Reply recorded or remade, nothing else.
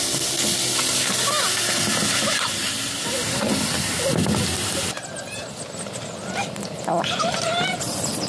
recorded